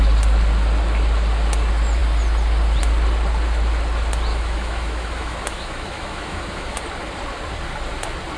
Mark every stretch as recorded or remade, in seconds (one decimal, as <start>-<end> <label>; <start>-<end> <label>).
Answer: 0.0-4.3 recorded; 4.3-6.8 remade; 6.8-8.4 recorded